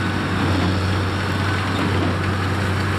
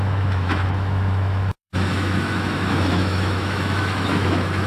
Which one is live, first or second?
first